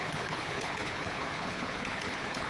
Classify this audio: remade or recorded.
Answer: remade